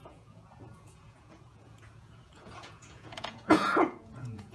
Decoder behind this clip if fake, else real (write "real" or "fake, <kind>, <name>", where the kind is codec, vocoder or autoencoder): fake, vocoder, Vocos